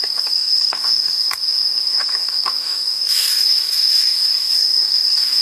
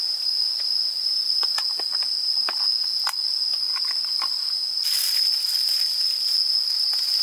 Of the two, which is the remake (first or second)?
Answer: first